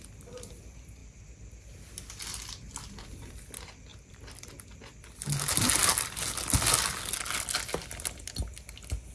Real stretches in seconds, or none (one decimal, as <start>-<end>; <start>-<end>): 0.0-3.9; 4.5-9.1